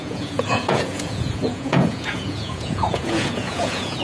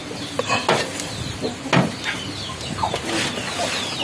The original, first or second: second